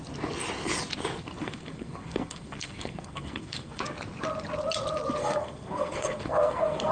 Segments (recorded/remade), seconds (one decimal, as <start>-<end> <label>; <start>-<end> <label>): 0.0-1.4 recorded; 1.4-3.8 remade; 3.8-5.2 recorded; 5.2-6.9 remade